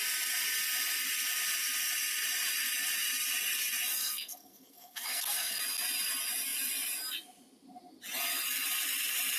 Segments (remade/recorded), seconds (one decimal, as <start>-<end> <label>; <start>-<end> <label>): 0.0-4.0 recorded; 4.0-5.6 remade; 5.6-9.4 recorded